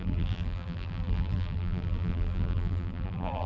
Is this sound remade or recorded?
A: remade